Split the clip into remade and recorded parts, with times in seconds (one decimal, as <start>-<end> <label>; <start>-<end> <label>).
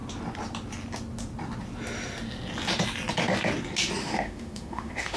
0.0-4.0 recorded; 4.0-5.2 remade